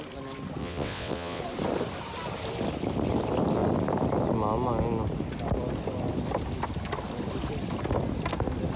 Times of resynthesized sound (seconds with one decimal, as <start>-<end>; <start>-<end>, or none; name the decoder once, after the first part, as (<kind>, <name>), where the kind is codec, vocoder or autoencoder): 0.6-1.4 (vocoder, WaveNeXt)